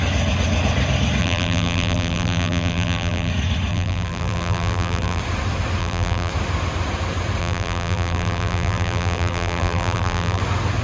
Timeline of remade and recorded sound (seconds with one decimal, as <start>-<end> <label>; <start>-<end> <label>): 0.0-1.2 recorded; 1.2-3.3 remade; 3.3-3.7 recorded; 3.7-5.2 remade; 5.2-5.8 recorded; 5.8-6.3 remade; 6.3-7.4 recorded; 7.4-10.4 remade; 10.4-10.8 recorded